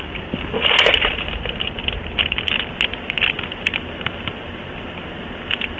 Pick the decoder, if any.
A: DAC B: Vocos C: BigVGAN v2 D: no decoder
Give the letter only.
D